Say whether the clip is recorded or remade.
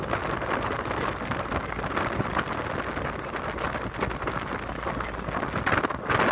recorded